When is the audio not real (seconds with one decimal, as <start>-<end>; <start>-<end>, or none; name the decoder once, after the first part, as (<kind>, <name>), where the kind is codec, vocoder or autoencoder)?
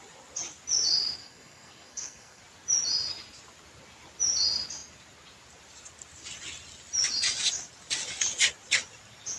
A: 1.2-2.4 (codec, SNAC)